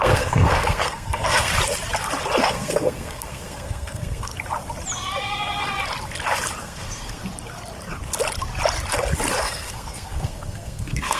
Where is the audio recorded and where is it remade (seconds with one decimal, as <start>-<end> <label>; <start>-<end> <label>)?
0.0-1.5 remade; 1.5-2.4 recorded; 2.4-4.3 remade; 4.3-6.6 recorded; 6.6-7.2 remade; 7.2-9.4 recorded; 9.4-11.2 remade